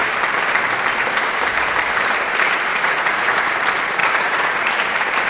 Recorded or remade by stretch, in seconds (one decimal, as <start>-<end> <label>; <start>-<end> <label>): 0.0-2.7 recorded; 2.7-3.5 remade; 3.5-4.0 recorded; 4.0-4.7 remade; 4.7-5.3 recorded